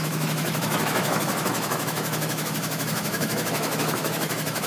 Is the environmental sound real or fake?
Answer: fake